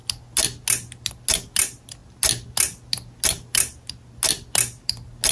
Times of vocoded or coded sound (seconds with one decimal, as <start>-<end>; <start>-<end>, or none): none